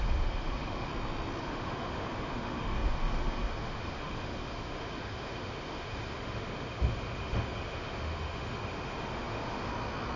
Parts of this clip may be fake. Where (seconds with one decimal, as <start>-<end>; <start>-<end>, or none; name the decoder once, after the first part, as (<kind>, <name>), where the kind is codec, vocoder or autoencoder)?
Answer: 0.0-0.9 (autoencoder, DAC-VAE); 1.4-9.7